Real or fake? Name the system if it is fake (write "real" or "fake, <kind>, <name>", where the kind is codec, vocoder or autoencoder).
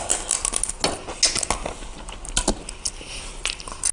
real